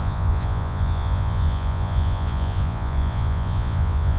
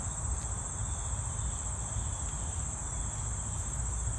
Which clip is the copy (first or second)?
first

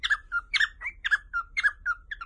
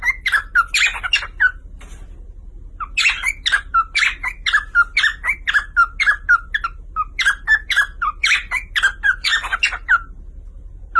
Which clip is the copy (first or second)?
first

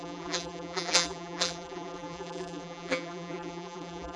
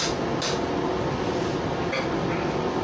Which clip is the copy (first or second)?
first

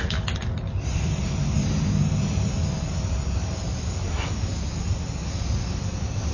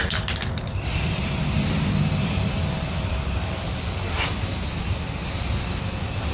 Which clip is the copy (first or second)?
second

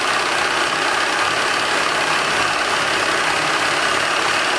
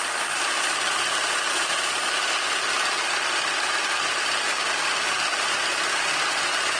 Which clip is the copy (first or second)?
second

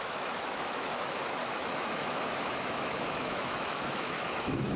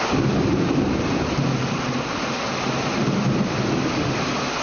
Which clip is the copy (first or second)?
first